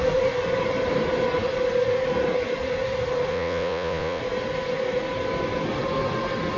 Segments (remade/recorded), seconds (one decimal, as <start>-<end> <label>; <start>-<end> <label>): 0.0-3.3 recorded; 3.3-4.2 remade; 4.2-6.6 recorded